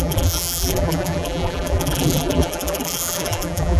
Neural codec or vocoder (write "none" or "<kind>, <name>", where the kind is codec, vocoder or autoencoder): vocoder, BigVGAN v2